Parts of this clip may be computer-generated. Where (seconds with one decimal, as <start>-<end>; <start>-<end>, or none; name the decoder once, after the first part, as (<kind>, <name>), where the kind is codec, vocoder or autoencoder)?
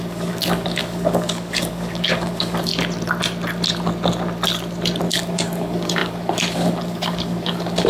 0.0-2.7 (codec, DAC); 5.0-7.9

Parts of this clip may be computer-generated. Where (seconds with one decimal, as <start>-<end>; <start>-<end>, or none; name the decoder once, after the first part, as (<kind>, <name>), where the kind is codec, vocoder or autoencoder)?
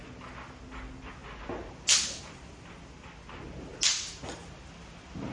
none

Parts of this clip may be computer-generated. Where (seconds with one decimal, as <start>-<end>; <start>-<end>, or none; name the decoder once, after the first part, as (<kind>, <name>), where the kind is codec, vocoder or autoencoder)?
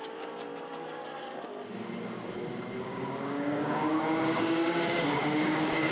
0.0-1.0 (codec, DAC); 2.8-5.9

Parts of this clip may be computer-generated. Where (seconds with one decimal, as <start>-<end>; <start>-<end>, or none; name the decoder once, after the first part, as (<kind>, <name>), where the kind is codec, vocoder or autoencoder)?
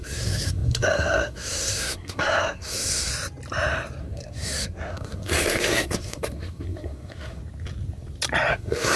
0.0-3.1 (codec, SNAC); 4.0-7.4; 8.5-9.0